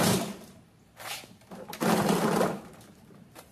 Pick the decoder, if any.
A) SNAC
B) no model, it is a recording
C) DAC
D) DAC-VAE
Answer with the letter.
B